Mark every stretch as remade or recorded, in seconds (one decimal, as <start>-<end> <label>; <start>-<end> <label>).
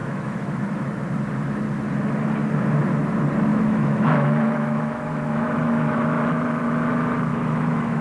0.0-0.6 remade; 0.6-3.5 recorded; 3.5-6.7 remade; 6.7-7.3 recorded; 7.3-8.0 remade